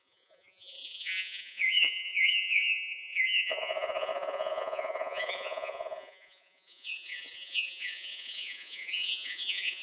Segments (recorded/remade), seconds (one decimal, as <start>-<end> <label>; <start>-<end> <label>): 0.0-9.8 remade